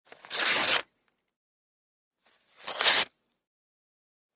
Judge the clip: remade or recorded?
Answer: recorded